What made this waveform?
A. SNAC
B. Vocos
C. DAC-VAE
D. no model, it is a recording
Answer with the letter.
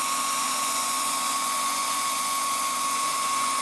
B